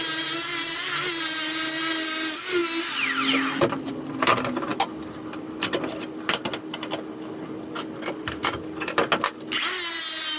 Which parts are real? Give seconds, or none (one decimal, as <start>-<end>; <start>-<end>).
0.0-10.4

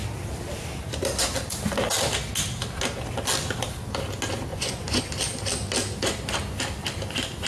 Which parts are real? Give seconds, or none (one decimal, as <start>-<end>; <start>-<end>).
0.0-4.5; 5.0-7.5

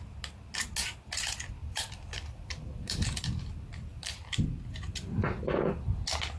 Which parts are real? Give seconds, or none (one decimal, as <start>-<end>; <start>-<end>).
0.0-1.6; 3.4-3.9; 4.5-6.4

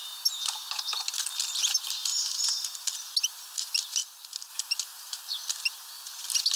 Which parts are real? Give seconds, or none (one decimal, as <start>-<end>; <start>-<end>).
2.1-3.2